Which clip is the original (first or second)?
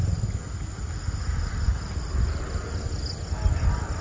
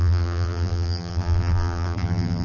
first